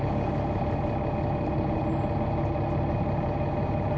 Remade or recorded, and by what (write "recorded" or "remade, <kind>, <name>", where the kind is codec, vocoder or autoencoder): recorded